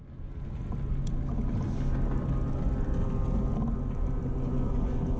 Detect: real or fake real